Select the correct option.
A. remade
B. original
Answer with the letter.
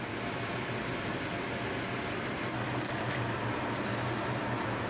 B